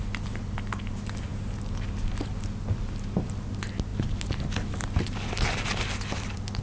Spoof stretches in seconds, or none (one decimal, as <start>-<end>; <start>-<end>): none